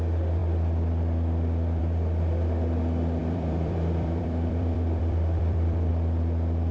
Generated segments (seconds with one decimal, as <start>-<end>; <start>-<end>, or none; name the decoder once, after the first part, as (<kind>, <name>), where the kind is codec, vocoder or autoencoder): 3.2-5.9 (vocoder, BigVGAN v2)